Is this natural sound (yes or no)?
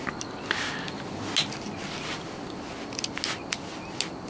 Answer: yes